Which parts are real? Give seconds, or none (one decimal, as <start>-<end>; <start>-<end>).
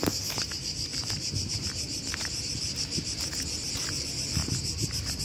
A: none